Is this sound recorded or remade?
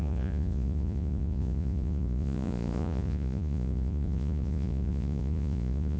remade